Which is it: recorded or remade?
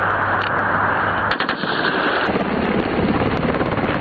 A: recorded